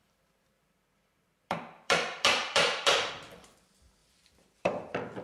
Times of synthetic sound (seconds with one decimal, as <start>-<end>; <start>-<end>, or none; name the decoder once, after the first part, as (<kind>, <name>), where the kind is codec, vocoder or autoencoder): 0.0-3.1 (vocoder, BigVGAN v2); 4.0-5.2